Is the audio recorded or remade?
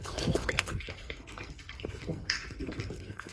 remade